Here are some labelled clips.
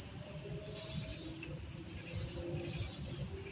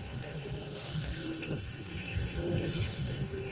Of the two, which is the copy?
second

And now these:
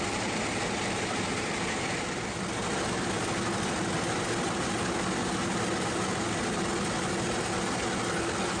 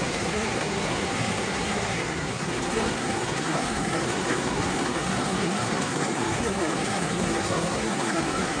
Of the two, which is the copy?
second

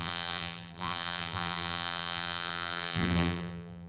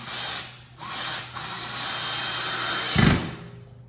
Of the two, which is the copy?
first